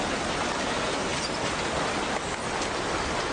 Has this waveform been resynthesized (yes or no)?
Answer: no